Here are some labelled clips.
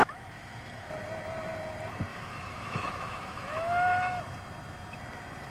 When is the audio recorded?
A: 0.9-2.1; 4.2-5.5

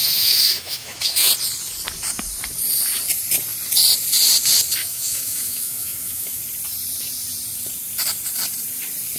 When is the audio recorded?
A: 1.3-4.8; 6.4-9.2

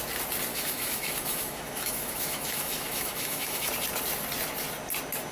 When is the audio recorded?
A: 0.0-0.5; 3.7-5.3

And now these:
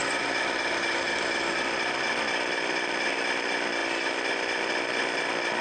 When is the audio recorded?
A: 0.0-5.6

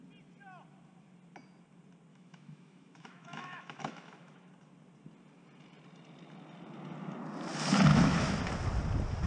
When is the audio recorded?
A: 0.0-2.1; 4.5-7.9; 8.4-9.3

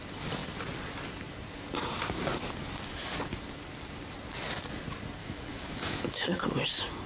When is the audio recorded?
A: 0.0-5.2; 6.4-7.1